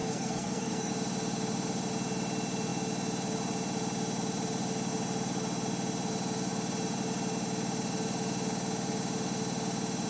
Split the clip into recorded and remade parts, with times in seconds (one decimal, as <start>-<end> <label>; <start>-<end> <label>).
0.0-0.9 remade; 0.9-10.1 recorded